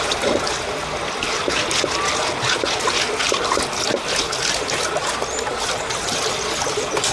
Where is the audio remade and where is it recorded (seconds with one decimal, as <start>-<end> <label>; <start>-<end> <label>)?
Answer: 0.0-7.1 recorded